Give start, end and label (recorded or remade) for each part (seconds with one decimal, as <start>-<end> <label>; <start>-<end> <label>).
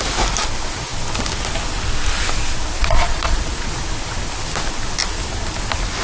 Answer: 0.0-2.8 recorded; 2.8-3.8 remade; 3.8-6.0 recorded